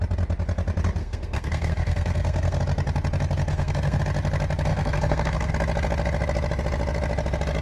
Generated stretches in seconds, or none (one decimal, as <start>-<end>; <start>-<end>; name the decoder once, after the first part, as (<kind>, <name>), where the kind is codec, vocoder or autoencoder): 1.0-2.6 (codec, SNAC); 3.5-4.0; 4.7-5.5